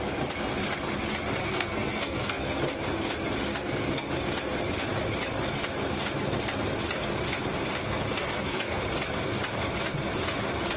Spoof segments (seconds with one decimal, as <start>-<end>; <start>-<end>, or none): 1.4-2.6; 3.5-4.1; 8.2-8.8

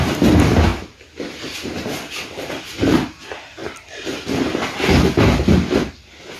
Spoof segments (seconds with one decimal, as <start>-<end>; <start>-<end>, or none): none

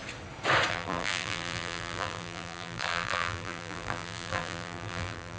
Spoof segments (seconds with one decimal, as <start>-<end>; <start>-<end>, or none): 0.7-5.4

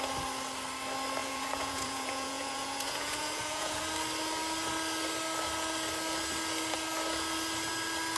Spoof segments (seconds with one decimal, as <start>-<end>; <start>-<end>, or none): 1.2-3.8

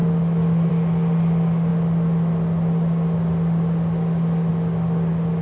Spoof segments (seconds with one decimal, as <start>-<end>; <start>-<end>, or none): none

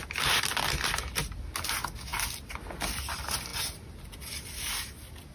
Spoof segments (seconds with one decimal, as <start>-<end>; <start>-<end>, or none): none

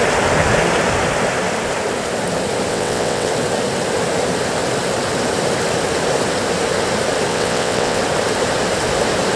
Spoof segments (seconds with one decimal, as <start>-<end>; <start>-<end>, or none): 2.7-3.3; 7.3-8.0